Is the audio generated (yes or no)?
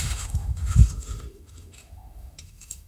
yes